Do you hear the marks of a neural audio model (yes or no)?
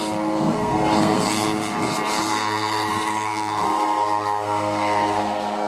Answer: yes